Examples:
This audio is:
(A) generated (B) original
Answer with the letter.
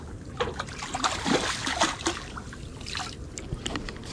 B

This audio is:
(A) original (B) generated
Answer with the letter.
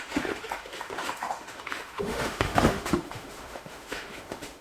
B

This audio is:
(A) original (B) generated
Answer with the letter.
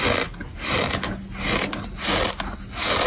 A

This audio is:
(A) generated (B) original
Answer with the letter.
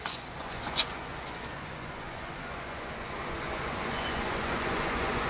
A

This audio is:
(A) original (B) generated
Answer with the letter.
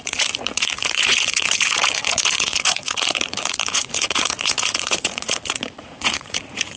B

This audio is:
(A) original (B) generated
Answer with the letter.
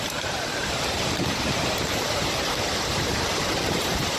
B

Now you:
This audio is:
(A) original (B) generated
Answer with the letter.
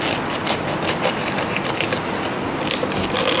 A